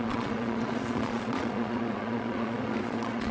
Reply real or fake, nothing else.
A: fake